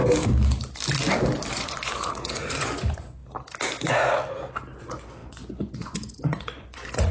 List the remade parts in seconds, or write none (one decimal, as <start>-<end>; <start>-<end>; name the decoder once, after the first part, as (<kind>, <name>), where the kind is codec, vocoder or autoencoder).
1.5-3.2 (vocoder, Vocos); 4.8-7.1